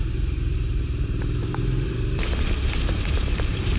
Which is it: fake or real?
fake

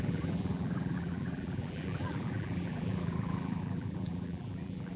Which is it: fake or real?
fake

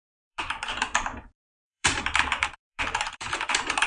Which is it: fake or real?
fake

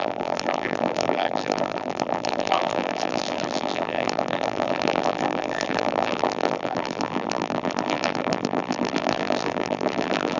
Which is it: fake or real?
fake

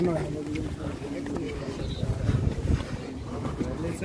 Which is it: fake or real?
real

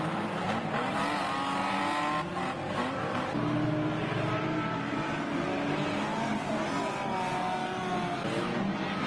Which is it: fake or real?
real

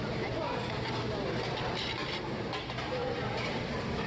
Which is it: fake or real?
fake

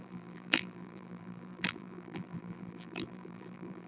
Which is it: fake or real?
fake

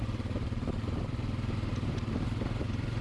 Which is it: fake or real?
fake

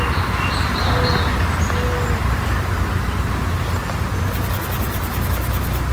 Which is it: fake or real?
real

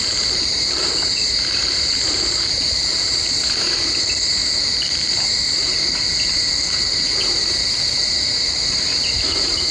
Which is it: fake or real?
fake